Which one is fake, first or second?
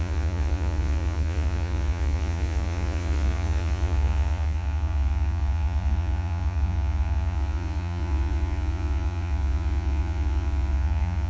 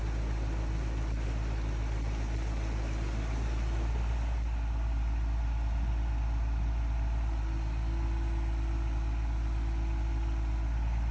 first